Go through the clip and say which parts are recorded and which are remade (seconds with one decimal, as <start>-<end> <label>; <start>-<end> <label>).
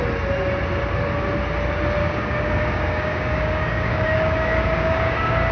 0.0-2.0 recorded; 2.0-5.5 remade